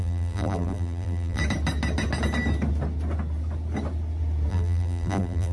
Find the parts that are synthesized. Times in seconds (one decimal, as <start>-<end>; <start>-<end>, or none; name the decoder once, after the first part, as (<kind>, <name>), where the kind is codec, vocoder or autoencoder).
0.0-1.4 (vocoder, BigVGAN v2); 4.5-5.5